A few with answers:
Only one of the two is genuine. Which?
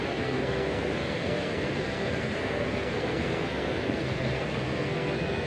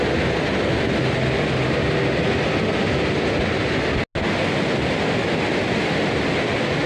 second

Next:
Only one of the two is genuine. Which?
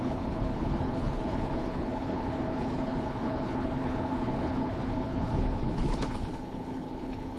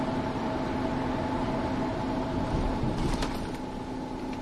second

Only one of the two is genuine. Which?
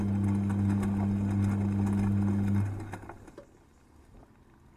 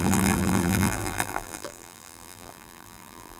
first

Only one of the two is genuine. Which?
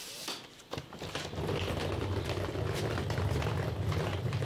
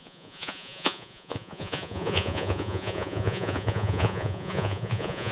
first